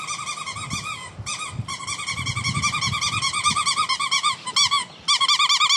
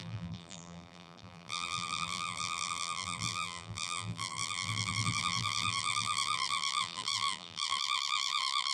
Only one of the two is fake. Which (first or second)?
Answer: second